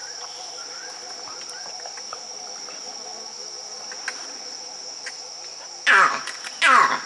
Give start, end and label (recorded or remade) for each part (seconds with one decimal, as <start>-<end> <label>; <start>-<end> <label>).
0.0-7.1 recorded